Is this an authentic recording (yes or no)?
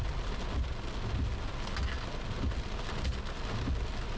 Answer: yes